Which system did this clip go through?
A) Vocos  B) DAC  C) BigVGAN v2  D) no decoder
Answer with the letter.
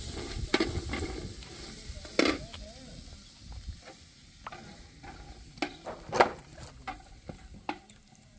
D